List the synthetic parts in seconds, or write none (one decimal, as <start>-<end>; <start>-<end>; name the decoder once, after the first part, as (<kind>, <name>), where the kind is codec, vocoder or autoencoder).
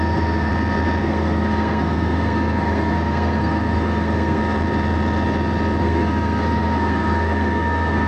0.0-0.5 (codec, SNAC); 1.0-4.4; 5.8-8.1